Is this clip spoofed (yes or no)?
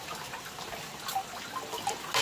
no